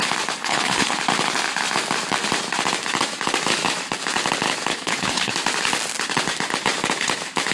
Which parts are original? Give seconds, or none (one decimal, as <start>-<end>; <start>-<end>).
0.0-0.4; 1.0-4.7; 5.3-7.5